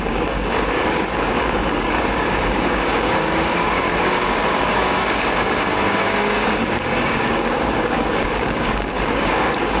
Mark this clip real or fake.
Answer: fake